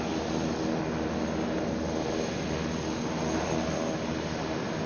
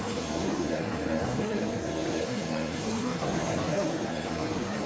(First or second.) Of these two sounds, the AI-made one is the second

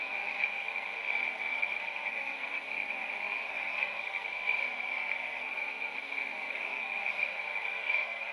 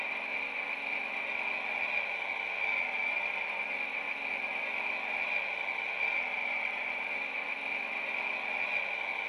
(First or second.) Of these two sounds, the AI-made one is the first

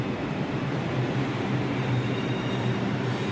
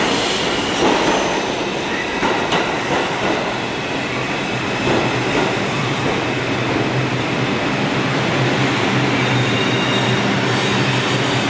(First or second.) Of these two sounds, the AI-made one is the first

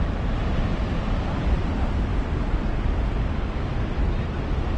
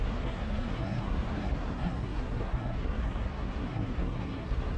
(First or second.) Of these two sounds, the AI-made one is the second